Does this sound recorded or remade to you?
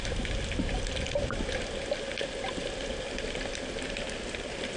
recorded